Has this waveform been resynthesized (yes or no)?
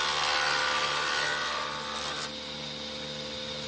no